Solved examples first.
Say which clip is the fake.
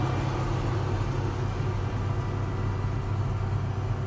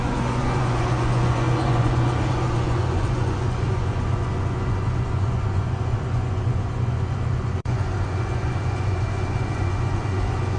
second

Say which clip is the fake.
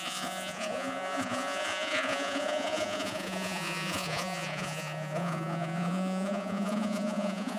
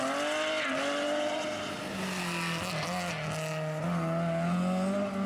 first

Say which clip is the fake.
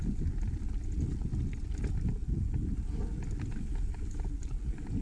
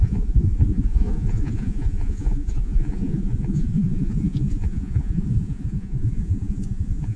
second